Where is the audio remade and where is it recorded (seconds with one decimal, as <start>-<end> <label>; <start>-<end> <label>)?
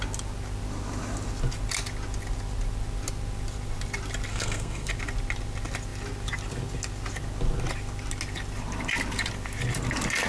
0.0-4.3 recorded; 4.3-4.9 remade; 4.9-10.3 recorded